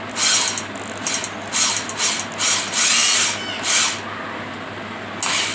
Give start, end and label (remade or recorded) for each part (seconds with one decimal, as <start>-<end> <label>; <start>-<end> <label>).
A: 0.0-5.5 recorded